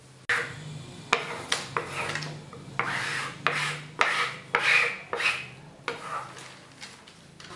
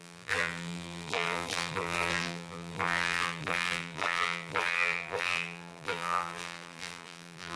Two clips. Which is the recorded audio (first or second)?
first